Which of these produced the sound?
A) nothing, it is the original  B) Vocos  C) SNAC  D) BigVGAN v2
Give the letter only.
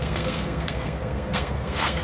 C